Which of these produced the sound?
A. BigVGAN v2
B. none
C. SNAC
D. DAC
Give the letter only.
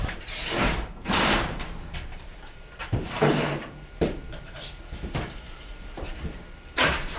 A